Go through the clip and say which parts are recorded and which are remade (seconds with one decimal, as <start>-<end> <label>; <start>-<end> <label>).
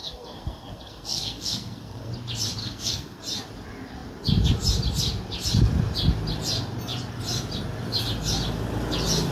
0.0-2.1 remade; 2.1-2.6 recorded; 2.6-3.2 remade; 3.2-9.3 recorded